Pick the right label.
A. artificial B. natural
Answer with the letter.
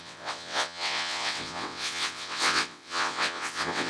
A